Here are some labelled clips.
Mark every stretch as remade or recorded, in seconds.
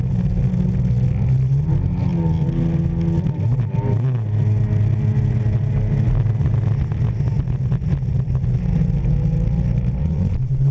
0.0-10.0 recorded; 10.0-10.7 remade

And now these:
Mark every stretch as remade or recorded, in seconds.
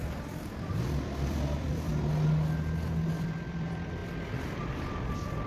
0.0-1.9 remade; 1.9-3.1 recorded; 3.1-5.5 remade